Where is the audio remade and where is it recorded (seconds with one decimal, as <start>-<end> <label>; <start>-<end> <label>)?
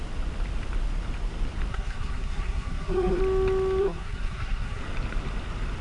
0.0-1.7 recorded; 1.7-3.2 remade; 3.2-3.8 recorded; 3.8-4.8 remade; 4.8-5.8 recorded